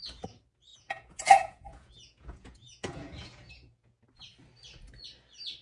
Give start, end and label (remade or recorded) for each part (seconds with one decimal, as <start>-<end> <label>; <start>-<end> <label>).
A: 0.0-0.7 recorded; 0.7-4.0 remade; 4.0-5.6 recorded